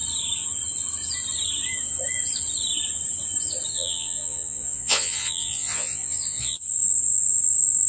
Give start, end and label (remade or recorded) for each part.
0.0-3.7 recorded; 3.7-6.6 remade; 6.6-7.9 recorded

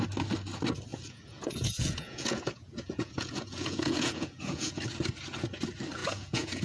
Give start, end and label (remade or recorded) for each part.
0.0-0.9 recorded; 0.9-4.8 remade; 4.8-6.0 recorded; 6.0-6.6 remade

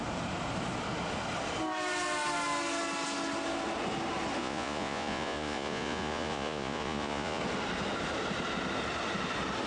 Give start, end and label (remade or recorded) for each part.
0.0-4.4 recorded; 4.4-7.4 remade; 7.4-9.7 recorded

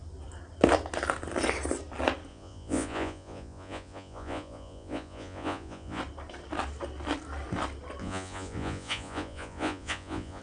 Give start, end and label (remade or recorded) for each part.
0.0-2.3 recorded; 2.3-6.0 remade; 6.0-8.0 recorded; 8.0-10.4 remade